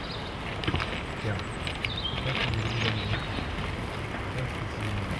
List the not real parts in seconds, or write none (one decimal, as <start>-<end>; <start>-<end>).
none